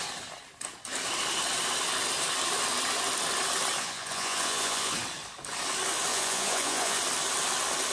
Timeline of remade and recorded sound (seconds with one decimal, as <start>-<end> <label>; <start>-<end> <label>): 0.0-3.8 recorded; 3.8-4.9 remade; 4.9-6.1 recorded; 6.1-7.0 remade; 7.0-7.9 recorded